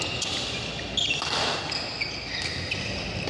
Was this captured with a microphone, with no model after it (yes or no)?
yes